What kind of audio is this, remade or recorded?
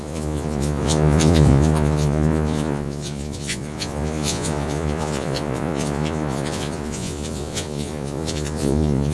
remade